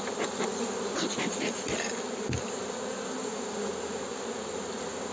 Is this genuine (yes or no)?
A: yes